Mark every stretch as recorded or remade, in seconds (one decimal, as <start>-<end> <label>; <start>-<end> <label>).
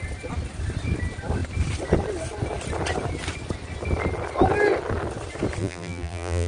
0.0-5.6 recorded; 5.6-6.5 remade